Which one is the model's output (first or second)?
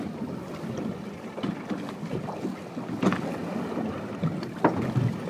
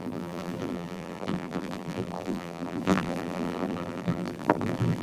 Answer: second